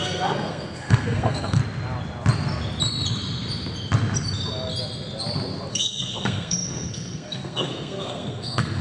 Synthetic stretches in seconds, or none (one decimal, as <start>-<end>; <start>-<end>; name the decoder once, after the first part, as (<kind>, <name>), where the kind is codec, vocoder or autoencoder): 0.0-1.6 (codec, SNAC); 5.7-8.8